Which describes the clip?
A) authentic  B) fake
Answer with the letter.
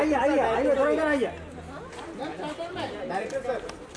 A